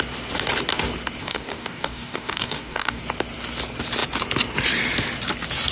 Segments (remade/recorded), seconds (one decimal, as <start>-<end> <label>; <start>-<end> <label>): 0.0-1.2 recorded; 1.2-3.0 remade; 3.0-5.7 recorded